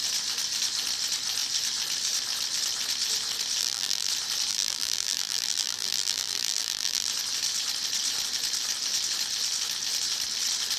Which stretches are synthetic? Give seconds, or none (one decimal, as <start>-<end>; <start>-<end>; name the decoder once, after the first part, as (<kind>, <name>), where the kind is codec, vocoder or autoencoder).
3.6-4.1 (vocoder, BigVGAN v2); 4.5-7.1